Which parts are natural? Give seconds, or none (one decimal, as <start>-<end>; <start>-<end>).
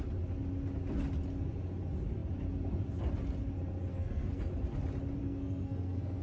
0.0-3.9; 4.4-5.2